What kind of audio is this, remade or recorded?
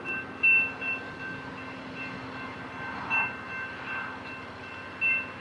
recorded